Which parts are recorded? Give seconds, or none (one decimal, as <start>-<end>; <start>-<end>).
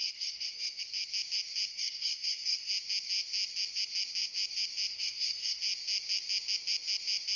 0.8-1.7; 2.7-4.9; 5.6-7.4